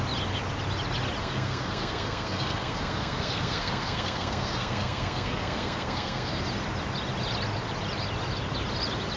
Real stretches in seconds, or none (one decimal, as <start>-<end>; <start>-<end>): 0.0-1.2; 6.4-9.2